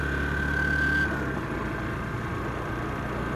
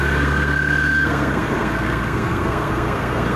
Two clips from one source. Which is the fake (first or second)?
second